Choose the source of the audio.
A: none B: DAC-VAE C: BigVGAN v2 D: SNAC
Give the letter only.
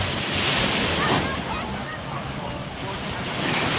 A